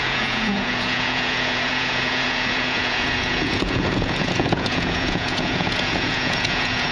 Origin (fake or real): fake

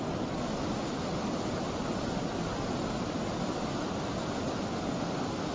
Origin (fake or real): real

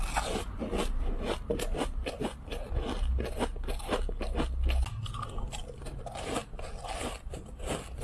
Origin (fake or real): real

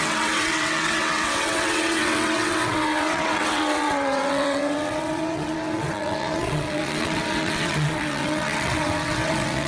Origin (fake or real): fake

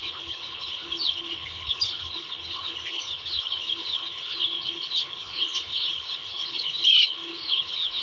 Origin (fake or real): fake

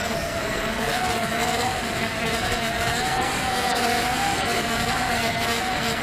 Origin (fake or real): fake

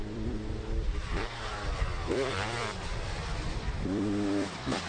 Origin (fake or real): fake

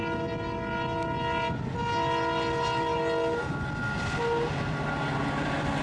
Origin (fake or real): real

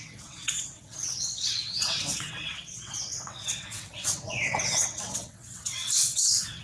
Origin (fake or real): fake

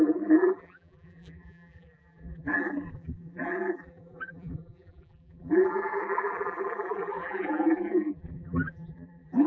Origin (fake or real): fake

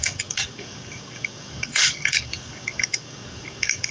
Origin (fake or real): fake